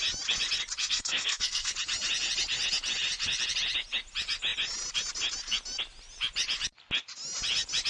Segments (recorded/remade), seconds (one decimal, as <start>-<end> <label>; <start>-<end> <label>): 0.0-0.8 recorded; 0.8-1.7 remade; 1.7-7.9 recorded